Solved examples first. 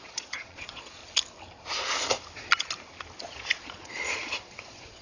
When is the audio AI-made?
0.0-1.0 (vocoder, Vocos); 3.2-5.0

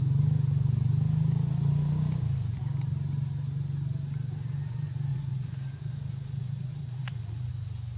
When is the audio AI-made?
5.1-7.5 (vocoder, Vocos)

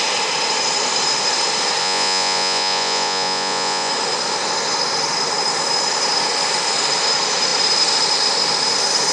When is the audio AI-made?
1.8-3.9 (vocoder, Vocos)

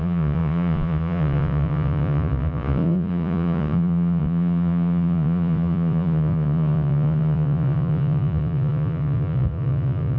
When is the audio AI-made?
0.0-10.2 (vocoder, Vocos)